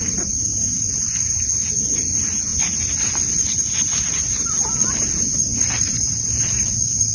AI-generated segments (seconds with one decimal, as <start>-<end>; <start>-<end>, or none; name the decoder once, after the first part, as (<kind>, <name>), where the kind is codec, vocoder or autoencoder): 0.5-1.4 (vocoder, BigVGAN v2); 5.5-6.1